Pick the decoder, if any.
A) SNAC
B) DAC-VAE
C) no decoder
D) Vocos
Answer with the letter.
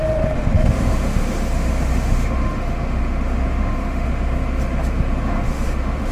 B